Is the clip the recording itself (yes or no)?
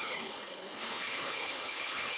no